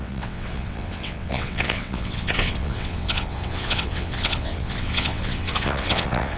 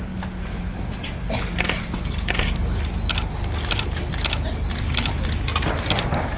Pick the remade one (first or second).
first